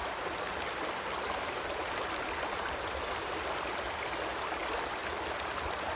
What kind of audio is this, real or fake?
real